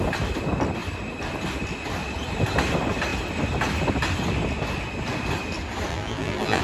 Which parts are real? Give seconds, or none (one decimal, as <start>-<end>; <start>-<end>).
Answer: 0.0-5.9